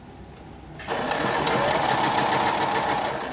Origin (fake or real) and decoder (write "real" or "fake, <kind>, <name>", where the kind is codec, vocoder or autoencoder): real